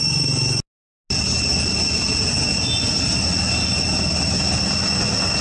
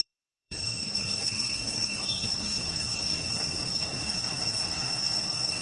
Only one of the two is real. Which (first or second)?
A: first